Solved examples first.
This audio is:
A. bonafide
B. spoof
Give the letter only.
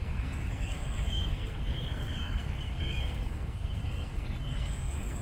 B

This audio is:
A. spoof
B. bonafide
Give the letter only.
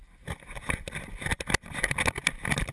B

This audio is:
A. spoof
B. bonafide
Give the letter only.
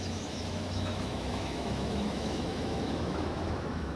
A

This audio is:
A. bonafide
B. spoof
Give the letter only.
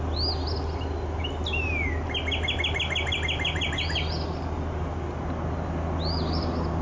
A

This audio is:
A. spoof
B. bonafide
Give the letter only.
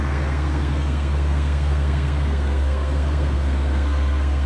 A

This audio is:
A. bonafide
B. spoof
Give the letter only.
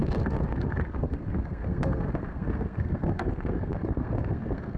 B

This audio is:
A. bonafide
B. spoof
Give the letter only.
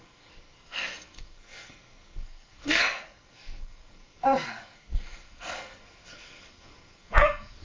B